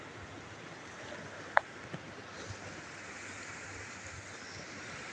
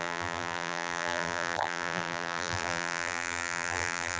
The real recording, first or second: first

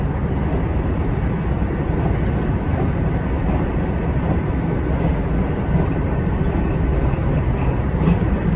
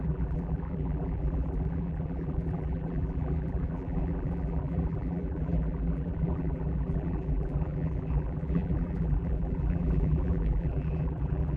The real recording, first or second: first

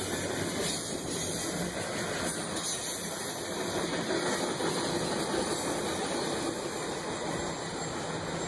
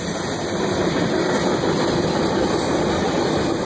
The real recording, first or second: first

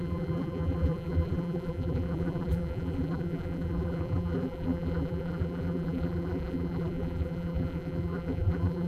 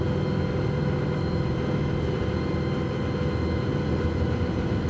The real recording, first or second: second